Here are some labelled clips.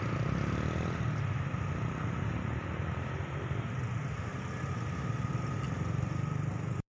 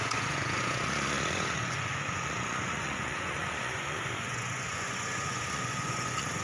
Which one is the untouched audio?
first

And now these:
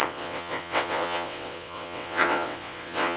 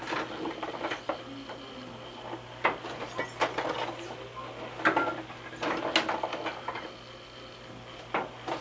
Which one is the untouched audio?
second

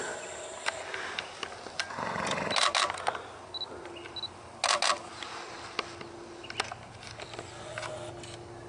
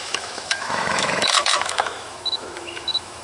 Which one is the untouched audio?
first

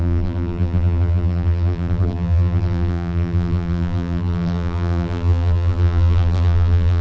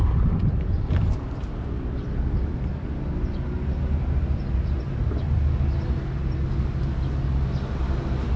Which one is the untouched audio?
second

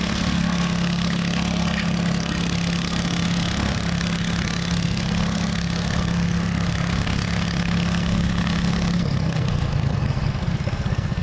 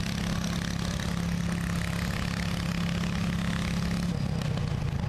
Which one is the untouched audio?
second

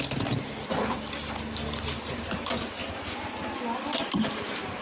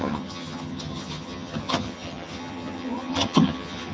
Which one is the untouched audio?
first